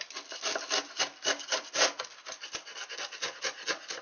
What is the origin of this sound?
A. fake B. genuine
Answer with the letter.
B